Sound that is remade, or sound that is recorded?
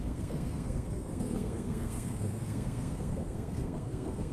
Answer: remade